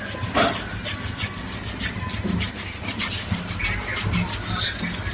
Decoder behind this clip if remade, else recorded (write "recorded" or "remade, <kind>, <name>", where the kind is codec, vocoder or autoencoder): recorded